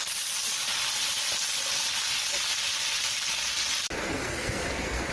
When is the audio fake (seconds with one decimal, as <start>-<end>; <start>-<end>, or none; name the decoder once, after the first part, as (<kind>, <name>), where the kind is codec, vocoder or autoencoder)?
4.0-5.1 (codec, SNAC)